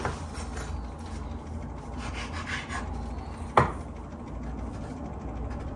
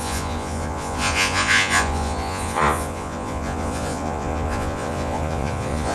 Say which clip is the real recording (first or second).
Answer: first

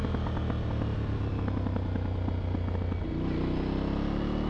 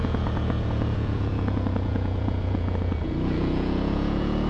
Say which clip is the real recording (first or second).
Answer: first